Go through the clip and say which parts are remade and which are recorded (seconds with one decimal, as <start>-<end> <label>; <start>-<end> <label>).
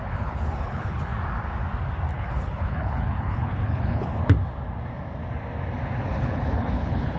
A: 0.0-1.1 remade; 1.1-2.1 recorded; 2.1-4.1 remade; 4.1-6.0 recorded; 6.0-7.2 remade